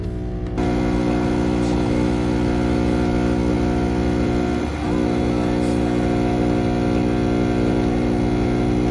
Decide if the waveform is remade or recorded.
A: recorded